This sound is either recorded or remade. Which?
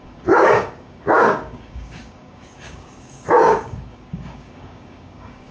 remade